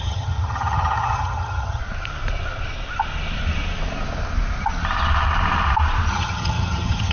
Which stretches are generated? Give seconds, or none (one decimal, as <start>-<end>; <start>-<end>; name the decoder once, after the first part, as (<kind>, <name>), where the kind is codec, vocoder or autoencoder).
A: 0.0-1.8 (vocoder, HiFi-GAN); 6.1-7.1